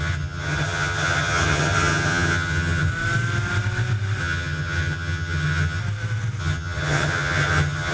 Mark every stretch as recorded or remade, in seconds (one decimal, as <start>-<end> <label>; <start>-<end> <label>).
0.0-2.9 remade; 2.9-4.2 recorded; 4.2-5.8 remade; 5.8-6.4 recorded; 6.4-7.9 remade